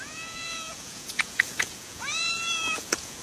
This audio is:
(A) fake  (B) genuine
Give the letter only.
A